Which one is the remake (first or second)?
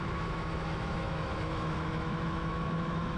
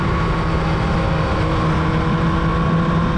first